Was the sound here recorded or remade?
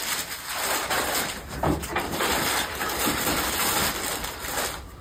recorded